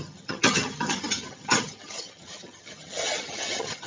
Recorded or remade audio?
remade